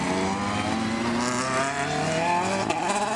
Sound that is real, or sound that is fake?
real